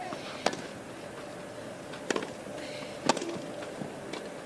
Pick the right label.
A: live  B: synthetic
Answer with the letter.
A